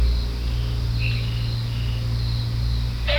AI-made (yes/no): no